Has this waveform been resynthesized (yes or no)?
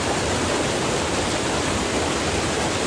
no